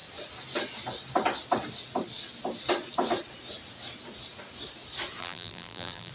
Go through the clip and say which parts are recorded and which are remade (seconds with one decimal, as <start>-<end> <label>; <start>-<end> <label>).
0.0-5.2 recorded; 5.2-6.1 remade